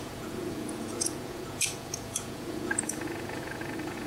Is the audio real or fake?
fake